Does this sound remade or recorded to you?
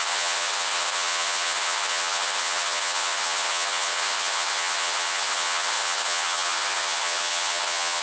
remade